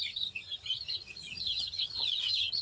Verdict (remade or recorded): remade